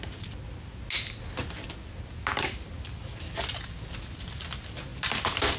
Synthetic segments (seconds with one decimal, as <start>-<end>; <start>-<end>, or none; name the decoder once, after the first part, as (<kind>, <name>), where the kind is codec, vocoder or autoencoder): none